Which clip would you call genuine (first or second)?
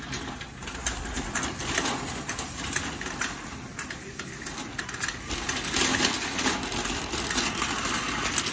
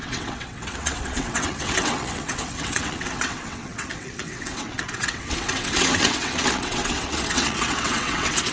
first